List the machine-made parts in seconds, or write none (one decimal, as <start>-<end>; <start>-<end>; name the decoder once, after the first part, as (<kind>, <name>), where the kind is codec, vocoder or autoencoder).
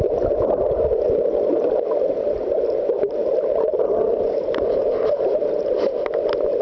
0.9-1.5 (vocoder, BigVGAN v2); 3.2-6.6